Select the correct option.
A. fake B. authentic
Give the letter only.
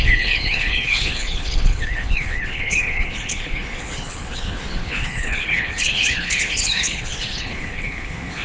A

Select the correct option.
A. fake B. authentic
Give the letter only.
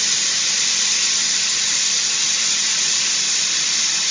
A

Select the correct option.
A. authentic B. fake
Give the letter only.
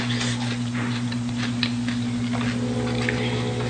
A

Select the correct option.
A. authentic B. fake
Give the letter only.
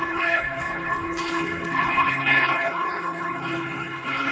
B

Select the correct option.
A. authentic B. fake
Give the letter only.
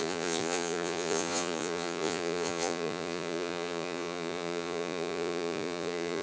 B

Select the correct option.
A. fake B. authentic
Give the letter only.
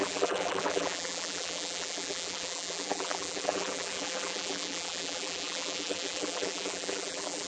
A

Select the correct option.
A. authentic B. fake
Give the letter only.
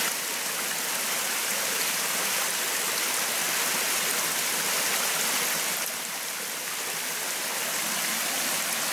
A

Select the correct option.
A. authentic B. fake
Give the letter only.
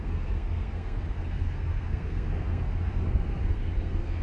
B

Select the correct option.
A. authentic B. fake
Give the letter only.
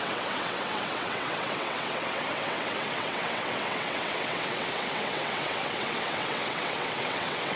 B